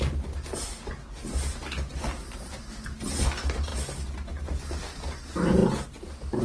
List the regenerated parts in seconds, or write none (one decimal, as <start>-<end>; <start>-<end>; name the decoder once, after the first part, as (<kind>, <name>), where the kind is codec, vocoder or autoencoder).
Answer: none